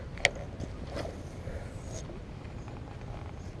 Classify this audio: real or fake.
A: real